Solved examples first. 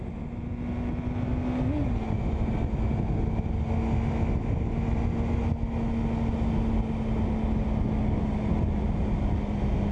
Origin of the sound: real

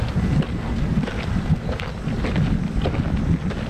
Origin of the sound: real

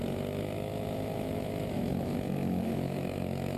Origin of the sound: fake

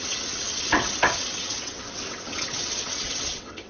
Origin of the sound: fake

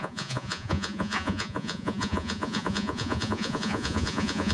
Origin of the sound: fake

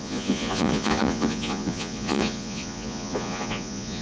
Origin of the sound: fake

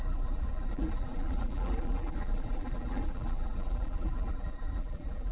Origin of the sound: fake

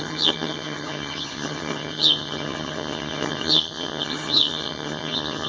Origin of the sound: fake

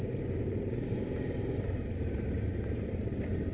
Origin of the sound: real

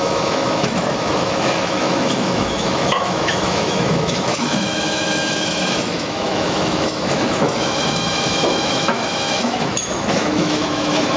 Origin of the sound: fake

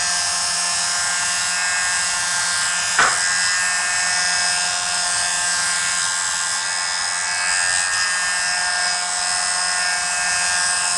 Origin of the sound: real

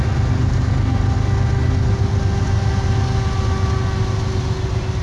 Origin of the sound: real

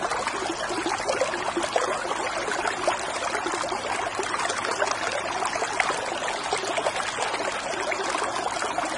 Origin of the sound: real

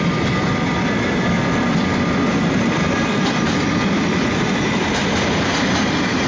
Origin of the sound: real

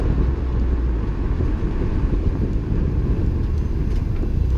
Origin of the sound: real